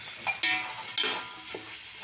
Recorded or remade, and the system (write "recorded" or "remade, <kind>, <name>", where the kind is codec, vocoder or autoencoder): recorded